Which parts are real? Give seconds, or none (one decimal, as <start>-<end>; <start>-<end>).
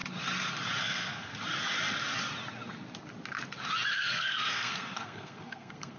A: 0.0-0.8; 1.3-3.9